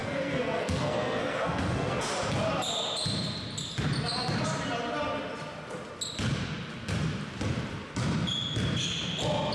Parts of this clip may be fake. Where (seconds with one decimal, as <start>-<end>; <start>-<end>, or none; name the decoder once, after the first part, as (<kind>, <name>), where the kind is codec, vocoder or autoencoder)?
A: 0.0-2.1 (codec, SNAC)

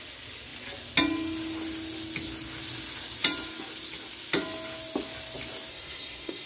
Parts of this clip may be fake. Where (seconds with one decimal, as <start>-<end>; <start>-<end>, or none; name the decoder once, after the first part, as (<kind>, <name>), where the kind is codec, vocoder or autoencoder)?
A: 5.7-6.5 (codec, SNAC)

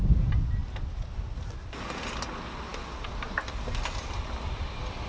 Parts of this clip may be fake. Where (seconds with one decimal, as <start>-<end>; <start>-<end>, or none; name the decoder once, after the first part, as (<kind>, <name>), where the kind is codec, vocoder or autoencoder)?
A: none

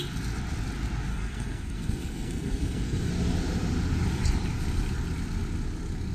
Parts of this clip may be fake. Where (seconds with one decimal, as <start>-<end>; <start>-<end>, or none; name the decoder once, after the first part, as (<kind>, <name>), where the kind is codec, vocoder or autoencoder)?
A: 1.1-3.1 (codec, SNAC)

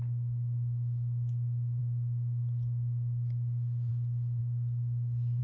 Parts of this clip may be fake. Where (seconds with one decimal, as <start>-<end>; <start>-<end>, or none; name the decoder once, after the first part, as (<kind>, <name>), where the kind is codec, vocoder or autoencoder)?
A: none

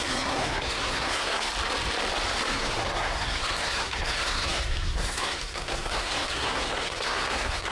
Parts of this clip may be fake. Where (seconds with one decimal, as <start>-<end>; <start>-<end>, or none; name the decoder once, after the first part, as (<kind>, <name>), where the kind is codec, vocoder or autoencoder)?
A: 0.0-1.5 (codec, SNAC); 2.5-7.7

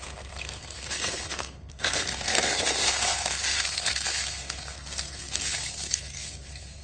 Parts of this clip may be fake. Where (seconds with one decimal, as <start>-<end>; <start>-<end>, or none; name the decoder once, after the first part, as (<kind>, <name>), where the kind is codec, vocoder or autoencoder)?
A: 0.0-6.8 (codec, SNAC)